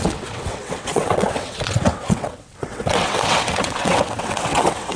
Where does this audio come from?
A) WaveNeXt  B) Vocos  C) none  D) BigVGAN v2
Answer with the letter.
A